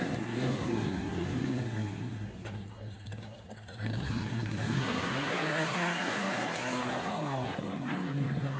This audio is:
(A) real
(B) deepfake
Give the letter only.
B